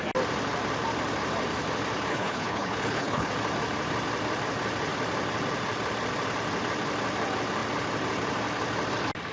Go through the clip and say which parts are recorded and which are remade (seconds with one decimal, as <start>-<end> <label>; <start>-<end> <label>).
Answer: 0.0-2.1 recorded; 2.1-3.3 remade; 3.3-9.3 recorded